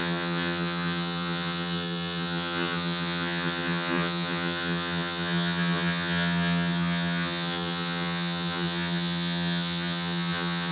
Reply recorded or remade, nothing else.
remade